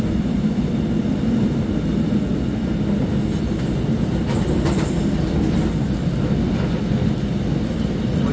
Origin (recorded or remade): recorded